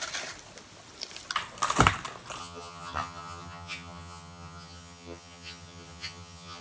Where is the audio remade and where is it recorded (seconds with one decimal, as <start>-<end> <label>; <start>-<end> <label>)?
0.0-2.4 recorded; 2.4-6.6 remade